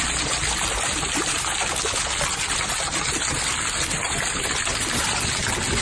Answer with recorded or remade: recorded